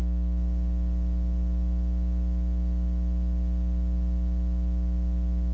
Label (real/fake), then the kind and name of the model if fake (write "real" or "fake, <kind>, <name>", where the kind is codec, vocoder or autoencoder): real